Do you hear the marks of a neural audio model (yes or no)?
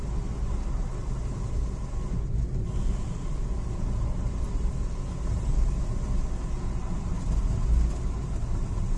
no